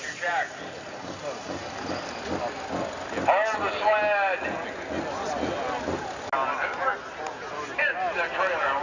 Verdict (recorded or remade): recorded